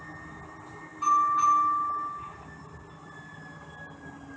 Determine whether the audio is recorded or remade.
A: recorded